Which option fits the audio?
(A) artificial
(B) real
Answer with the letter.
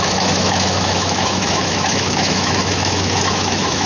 A